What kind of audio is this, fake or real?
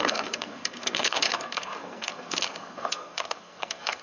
fake